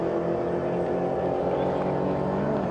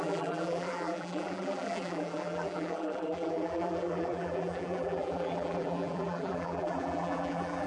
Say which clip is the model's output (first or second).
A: second